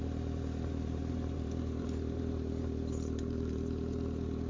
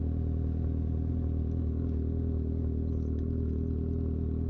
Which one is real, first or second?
second